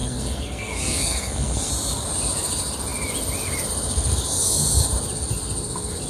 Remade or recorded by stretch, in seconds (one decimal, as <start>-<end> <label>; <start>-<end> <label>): 0.0-1.7 remade; 1.7-6.1 recorded

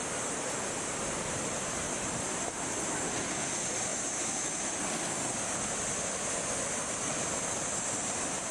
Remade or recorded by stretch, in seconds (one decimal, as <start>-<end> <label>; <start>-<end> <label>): 0.0-8.5 recorded

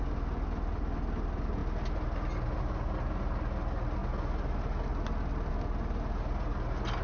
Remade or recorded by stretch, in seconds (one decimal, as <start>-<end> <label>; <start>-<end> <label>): 0.0-7.0 recorded

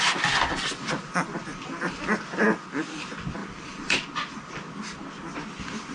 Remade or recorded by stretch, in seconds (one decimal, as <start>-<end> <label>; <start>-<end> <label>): 0.0-1.5 recorded; 1.5-2.0 remade; 2.0-3.4 recorded; 3.4-4.5 remade; 4.5-5.9 recorded

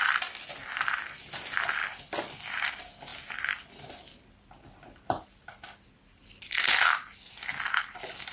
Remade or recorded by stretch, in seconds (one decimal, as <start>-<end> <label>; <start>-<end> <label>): 0.0-8.3 recorded

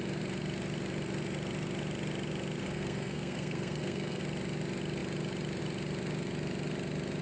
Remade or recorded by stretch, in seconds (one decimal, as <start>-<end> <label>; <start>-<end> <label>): 0.0-2.6 recorded; 2.6-4.2 remade; 4.2-7.2 recorded

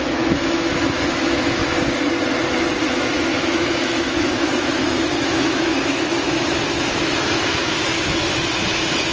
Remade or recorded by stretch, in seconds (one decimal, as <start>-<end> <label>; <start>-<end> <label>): 0.0-1.6 remade; 1.6-2.9 recorded; 2.9-9.1 remade